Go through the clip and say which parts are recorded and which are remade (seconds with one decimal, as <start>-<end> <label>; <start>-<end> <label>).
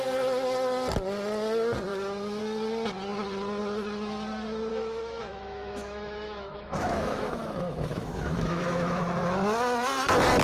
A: 0.0-1.9 recorded; 1.9-2.4 remade; 2.4-4.7 recorded; 4.7-9.0 remade; 9.0-10.4 recorded